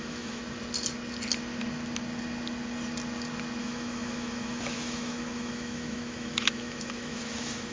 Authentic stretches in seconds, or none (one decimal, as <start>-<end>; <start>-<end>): 0.4-3.6